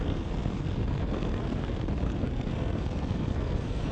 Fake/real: fake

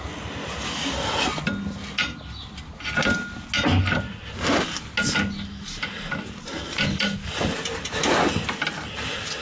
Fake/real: real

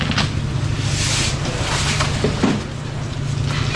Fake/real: real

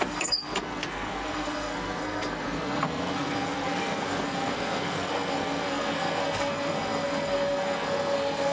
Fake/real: fake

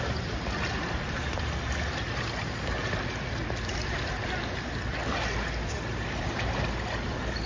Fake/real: real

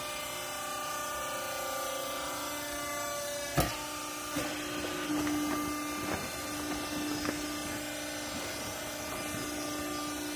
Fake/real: real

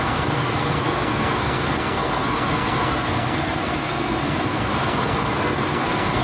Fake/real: fake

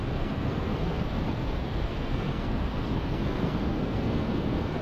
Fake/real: fake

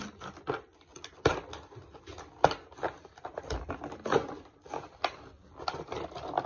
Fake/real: real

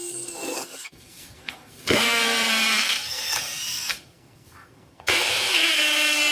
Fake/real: fake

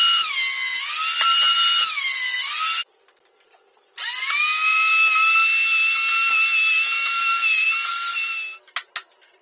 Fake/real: real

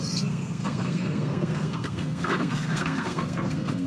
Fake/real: fake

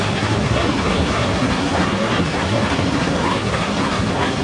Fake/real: fake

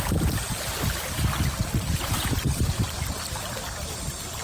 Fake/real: real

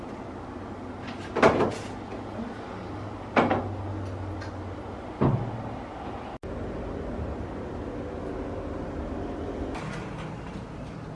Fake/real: real